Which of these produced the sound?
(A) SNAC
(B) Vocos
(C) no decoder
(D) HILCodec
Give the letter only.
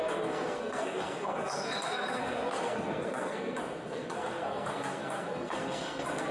A